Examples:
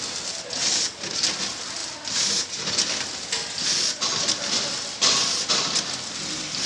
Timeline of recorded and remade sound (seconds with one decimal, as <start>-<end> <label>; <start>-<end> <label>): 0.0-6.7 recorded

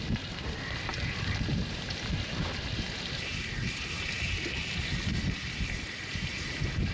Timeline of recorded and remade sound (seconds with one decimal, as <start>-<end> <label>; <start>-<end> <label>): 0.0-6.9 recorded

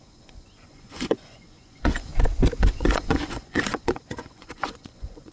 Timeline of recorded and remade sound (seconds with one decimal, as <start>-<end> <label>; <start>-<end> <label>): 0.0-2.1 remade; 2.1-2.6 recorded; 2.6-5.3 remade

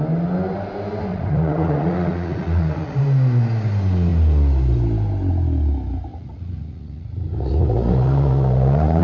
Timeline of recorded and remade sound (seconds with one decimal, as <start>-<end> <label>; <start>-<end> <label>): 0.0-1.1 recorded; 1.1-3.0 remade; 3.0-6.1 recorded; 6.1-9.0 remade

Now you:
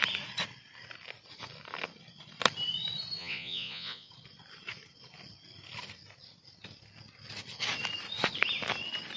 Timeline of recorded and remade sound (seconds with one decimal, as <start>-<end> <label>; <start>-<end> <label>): 0.0-3.2 recorded; 3.2-4.1 remade; 4.1-9.2 recorded